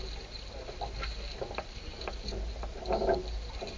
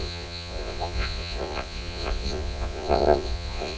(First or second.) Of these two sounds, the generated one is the second